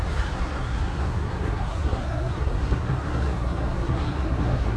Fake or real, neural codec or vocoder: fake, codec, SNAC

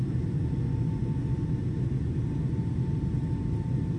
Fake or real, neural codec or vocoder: real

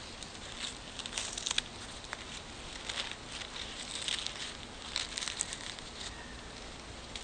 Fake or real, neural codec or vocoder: real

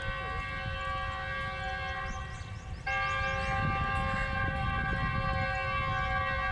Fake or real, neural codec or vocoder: real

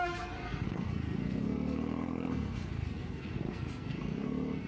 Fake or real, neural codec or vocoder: fake, codec, SNAC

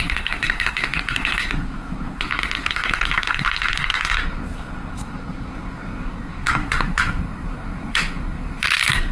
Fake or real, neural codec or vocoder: fake, codec, SNAC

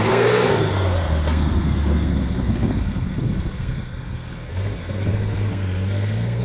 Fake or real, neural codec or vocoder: fake, codec, SNAC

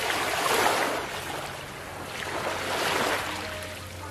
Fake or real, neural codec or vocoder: real